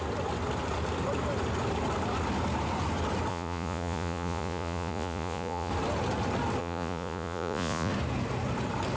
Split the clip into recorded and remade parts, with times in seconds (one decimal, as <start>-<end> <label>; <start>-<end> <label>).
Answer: 0.0-3.3 recorded; 3.3-5.7 remade; 5.7-6.6 recorded; 6.6-7.9 remade; 7.9-9.0 recorded